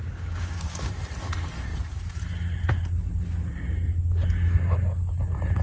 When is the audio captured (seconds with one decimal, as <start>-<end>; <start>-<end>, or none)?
0.9-5.6